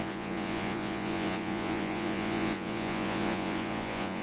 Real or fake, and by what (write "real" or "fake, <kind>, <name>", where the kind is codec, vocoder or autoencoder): fake, vocoder, Vocos